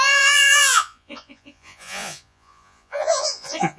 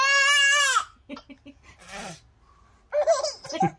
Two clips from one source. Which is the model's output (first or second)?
first